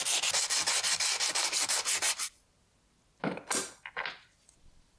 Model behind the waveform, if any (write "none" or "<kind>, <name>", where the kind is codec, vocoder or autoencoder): none